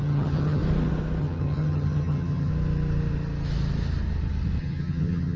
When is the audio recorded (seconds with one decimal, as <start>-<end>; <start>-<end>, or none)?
0.6-1.2; 2.5-4.6